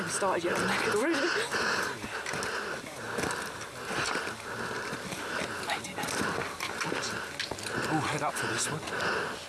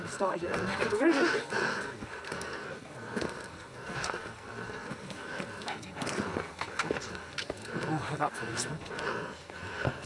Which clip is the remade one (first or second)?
second